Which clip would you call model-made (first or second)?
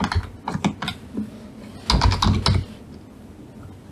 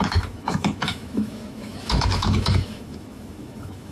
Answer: second